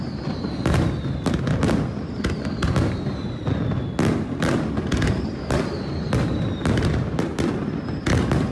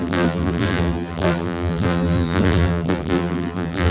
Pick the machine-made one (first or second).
second